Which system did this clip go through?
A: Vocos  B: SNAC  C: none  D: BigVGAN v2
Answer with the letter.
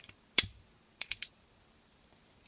D